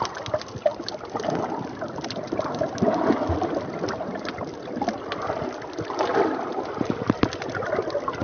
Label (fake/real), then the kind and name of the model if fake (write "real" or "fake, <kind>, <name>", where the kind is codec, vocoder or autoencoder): real